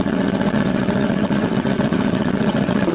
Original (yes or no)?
no